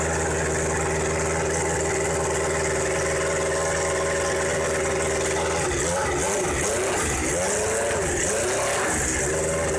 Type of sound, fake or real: real